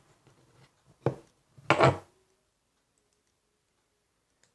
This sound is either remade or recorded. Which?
recorded